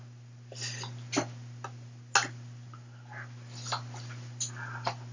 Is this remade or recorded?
recorded